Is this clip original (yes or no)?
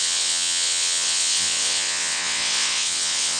no